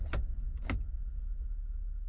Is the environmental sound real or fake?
real